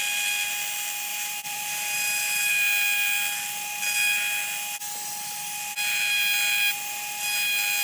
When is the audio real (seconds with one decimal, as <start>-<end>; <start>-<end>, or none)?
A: 0.0-1.1; 2.5-7.8